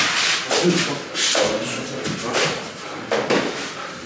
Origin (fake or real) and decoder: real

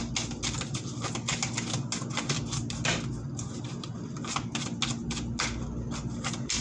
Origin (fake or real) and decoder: real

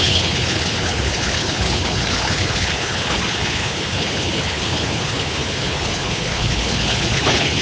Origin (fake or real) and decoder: fake, codec, HILCodec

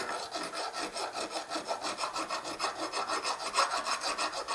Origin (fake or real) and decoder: real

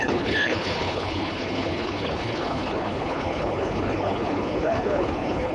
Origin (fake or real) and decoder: fake, codec, HILCodec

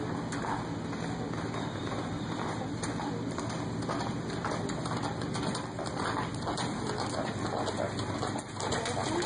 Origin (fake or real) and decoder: real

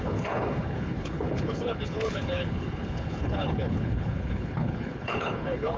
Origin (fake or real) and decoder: fake, codec, HILCodec